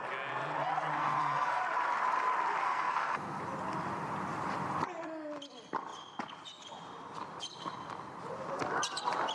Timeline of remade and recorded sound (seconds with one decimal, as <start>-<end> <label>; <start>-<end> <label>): 0.0-0.9 recorded; 0.9-1.6 remade; 1.6-2.6 recorded; 2.6-3.4 remade; 3.4-9.3 recorded